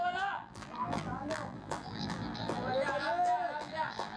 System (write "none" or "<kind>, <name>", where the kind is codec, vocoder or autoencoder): vocoder, BigVGAN v2